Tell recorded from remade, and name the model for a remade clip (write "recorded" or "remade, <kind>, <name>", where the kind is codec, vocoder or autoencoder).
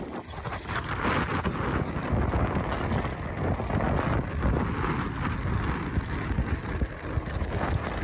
recorded